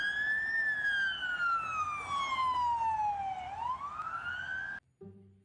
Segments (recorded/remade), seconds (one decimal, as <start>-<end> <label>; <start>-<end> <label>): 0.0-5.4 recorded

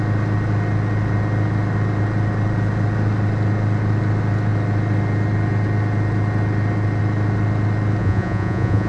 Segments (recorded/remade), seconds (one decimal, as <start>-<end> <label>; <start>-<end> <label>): 0.0-8.0 recorded; 8.0-8.9 remade

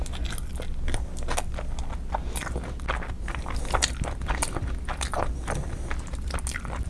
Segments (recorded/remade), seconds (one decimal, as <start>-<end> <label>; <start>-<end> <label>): 0.0-6.9 recorded